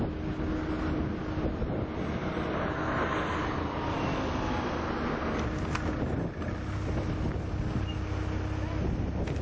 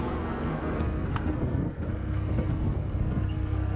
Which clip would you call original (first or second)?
first